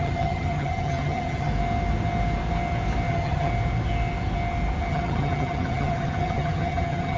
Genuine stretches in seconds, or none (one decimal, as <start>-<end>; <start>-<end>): 1.5-3.1; 3.5-4.9